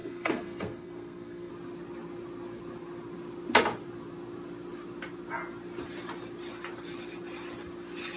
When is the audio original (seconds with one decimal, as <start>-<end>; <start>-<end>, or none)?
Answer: 1.5-8.2